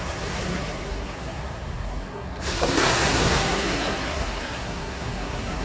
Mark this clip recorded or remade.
remade